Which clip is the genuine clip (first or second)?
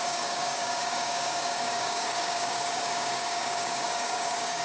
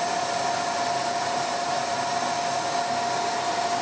second